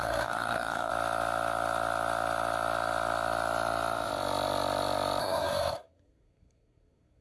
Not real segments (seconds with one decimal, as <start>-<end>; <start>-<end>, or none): 0.0-0.9; 5.2-7.2